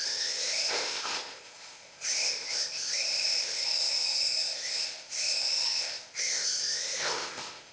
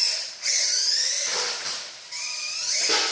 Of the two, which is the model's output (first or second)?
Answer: first